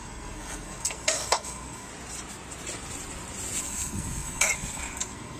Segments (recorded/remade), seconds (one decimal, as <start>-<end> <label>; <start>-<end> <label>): 0.0-1.9 remade; 1.9-3.6 recorded; 3.6-5.4 remade